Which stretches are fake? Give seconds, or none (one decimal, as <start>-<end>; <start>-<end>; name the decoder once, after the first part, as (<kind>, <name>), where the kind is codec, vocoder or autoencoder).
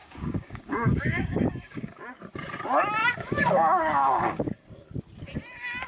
0.0-2.0 (codec, DAC); 3.0-4.4